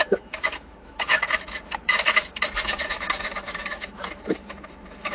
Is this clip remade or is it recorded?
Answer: remade